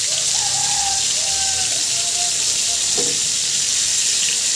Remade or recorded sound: recorded